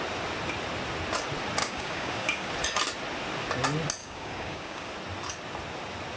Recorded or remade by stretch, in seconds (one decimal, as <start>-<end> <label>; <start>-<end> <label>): 0.0-1.6 recorded; 1.6-2.5 remade; 2.5-4.0 recorded; 4.0-4.9 remade; 4.9-6.2 recorded